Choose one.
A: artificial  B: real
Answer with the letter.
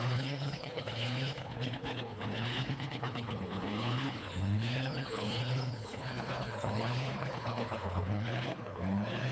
A